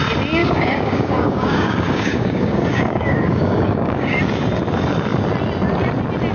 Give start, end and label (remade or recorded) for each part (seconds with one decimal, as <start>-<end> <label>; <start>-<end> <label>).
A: 0.0-0.4 recorded; 0.4-4.2 remade; 4.2-6.3 recorded